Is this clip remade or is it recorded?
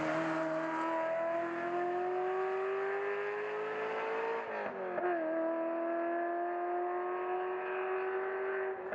recorded